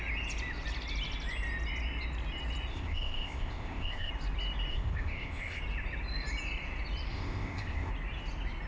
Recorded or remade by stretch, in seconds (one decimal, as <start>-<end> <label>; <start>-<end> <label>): 0.0-2.7 recorded; 2.7-4.1 remade; 4.1-4.7 recorded; 4.7-5.6 remade; 5.6-7.1 recorded; 7.1-7.9 remade; 7.9-8.7 recorded